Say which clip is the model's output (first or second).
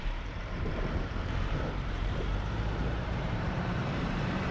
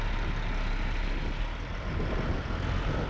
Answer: first